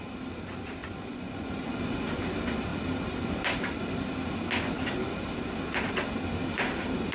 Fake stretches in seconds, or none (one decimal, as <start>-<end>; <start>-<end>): 0.8-1.5